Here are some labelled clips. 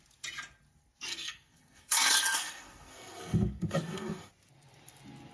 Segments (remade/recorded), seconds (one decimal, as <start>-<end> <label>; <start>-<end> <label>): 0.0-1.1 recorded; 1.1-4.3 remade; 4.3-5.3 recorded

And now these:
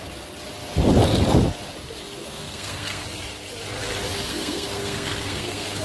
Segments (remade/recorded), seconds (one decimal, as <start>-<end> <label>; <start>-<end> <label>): 0.0-2.2 recorded; 2.2-3.0 remade; 3.0-4.3 recorded; 4.3-5.8 remade

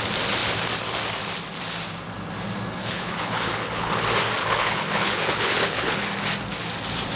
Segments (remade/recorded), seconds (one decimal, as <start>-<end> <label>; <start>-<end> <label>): 0.0-2.8 recorded; 2.8-3.9 remade; 3.9-4.4 recorded; 4.4-6.0 remade; 6.0-7.2 recorded